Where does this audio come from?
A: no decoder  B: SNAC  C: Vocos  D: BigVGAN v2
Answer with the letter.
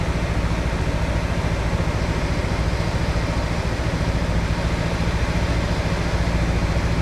A